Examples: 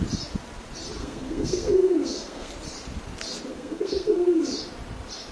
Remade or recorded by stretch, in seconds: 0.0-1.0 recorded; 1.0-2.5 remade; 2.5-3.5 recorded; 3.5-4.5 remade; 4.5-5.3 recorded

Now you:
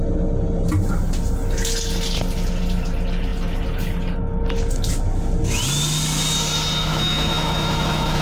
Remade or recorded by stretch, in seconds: 0.0-6.9 recorded; 6.9-8.2 remade

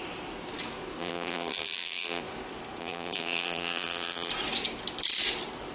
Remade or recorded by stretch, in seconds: 0.0-1.0 recorded; 1.0-2.2 remade; 2.2-2.8 recorded; 2.8-4.3 remade; 4.3-5.7 recorded

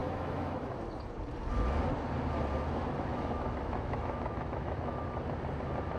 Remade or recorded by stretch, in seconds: 0.0-0.8 remade; 0.8-3.1 recorded; 3.1-4.9 remade; 4.9-6.0 recorded

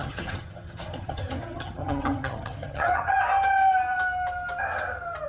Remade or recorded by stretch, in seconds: 0.0-3.2 remade; 3.2-5.3 recorded

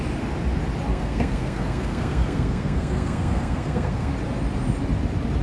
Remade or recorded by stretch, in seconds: 0.0-0.9 recorded; 0.9-4.1 remade; 4.1-5.4 recorded

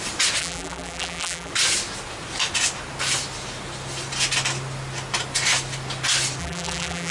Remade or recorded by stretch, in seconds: 0.0-0.4 recorded; 0.4-1.5 remade; 1.5-6.4 recorded; 6.4-7.1 remade

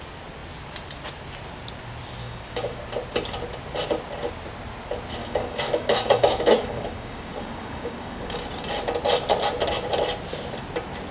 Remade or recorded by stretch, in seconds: 0.0-2.2 recorded; 2.2-2.8 remade; 2.8-5.2 recorded; 5.2-8.8 remade; 8.8-11.1 recorded